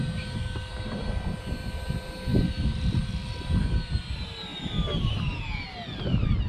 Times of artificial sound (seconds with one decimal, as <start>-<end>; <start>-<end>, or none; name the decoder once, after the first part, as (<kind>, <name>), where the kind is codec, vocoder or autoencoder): 2.3-3.4 (vocoder, BigVGAN v2)